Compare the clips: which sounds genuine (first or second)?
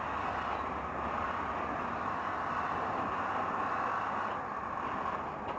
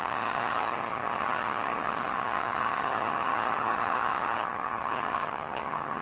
first